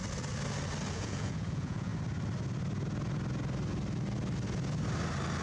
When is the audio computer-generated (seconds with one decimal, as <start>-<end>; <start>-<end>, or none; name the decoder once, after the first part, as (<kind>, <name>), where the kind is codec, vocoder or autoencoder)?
0.9-1.9 (vocoder, Vocos)